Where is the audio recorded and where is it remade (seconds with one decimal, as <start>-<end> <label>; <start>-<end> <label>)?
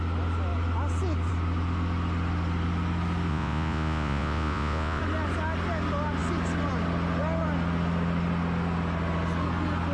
0.0-3.3 recorded; 3.3-5.0 remade; 5.0-9.9 recorded